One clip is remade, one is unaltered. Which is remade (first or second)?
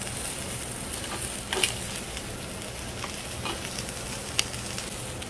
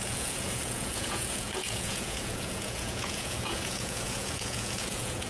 second